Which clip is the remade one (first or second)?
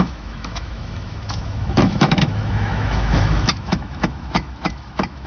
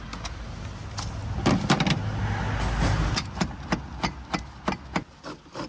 first